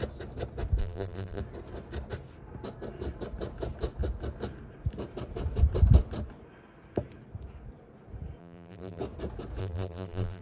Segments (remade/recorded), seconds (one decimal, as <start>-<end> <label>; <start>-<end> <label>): 0.0-0.8 recorded; 0.8-1.4 remade; 1.4-8.4 recorded; 8.4-9.0 remade; 9.0-9.6 recorded; 9.6-10.4 remade